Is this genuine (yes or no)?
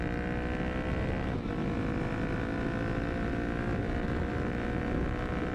yes